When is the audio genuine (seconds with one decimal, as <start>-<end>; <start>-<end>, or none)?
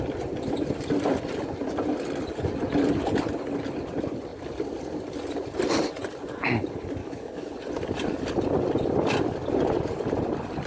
0.0-7.0; 7.5-10.7